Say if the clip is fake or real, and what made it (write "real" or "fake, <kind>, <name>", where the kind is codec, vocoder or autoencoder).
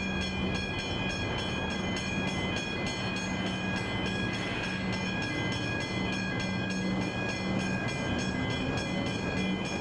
real